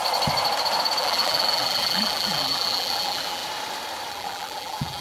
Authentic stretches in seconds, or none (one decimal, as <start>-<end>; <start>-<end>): 0.0-1.0; 3.4-4.1